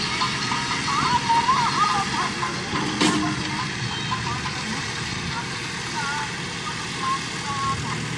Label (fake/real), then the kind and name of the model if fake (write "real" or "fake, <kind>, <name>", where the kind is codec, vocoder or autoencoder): real